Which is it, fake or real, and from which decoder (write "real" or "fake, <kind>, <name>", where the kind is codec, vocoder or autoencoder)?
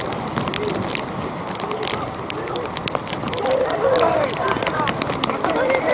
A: real